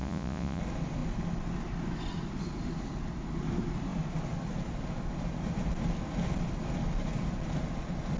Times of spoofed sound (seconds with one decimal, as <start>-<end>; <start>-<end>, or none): 0.0-0.6